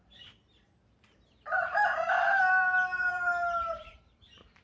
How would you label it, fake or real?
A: fake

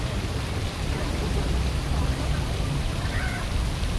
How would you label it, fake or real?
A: fake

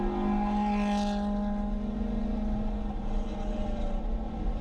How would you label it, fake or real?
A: real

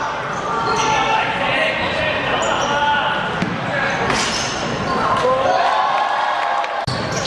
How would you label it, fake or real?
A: real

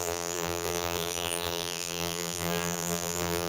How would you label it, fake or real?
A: fake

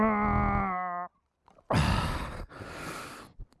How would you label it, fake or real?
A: real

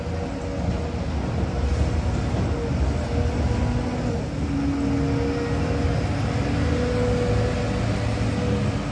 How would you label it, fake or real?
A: real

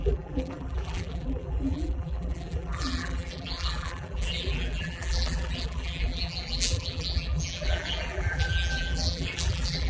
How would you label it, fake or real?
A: fake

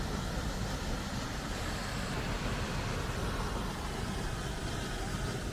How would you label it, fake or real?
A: real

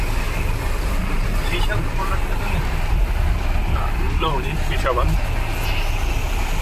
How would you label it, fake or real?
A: real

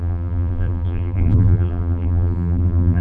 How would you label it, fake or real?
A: fake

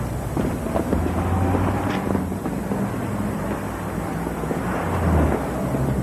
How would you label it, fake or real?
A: real